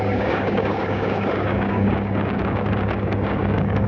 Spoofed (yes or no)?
yes